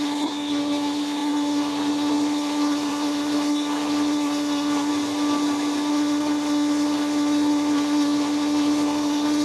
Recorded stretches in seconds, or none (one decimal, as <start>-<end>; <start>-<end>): 4.9-5.9